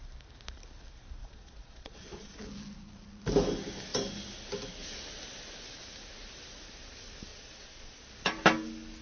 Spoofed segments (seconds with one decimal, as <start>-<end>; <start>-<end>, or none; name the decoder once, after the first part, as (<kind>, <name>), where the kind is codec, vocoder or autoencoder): 1.2-2.4 (vocoder, Vocos); 7.3-8.1